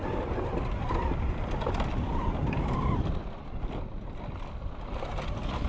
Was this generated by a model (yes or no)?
no